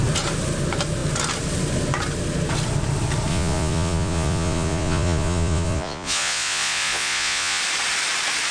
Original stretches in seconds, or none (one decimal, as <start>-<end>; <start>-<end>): 0.0-3.3; 7.6-8.5